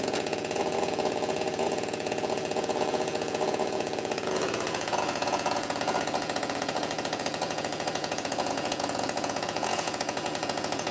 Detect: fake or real fake